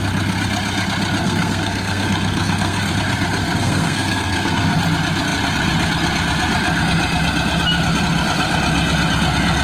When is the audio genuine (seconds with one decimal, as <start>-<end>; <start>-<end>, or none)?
0.0-1.2; 2.9-3.4; 4.8-9.6